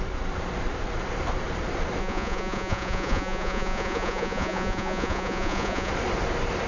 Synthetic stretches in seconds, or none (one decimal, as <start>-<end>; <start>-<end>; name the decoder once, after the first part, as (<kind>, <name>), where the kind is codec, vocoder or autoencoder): 2.0-5.9 (vocoder, Vocos)